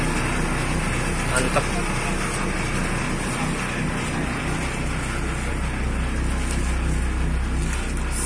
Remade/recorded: recorded